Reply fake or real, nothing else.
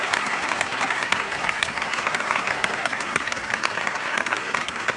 fake